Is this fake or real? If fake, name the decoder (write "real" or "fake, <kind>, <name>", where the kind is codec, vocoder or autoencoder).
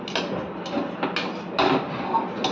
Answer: real